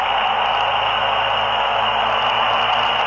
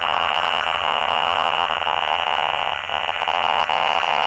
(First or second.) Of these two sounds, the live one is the first